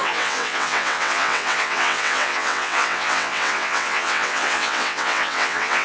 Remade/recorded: remade